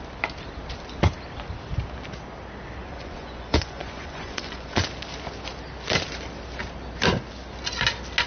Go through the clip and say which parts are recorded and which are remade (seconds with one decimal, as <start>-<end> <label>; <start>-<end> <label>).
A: 0.0-2.8 recorded; 2.8-4.8 remade; 4.8-8.3 recorded